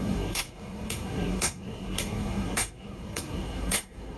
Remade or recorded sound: remade